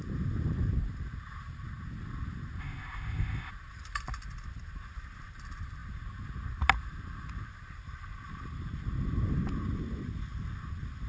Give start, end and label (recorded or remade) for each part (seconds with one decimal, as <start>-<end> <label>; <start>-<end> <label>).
0.0-2.6 recorded; 2.6-3.5 remade; 3.5-11.1 recorded